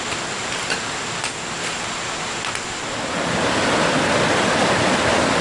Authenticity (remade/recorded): recorded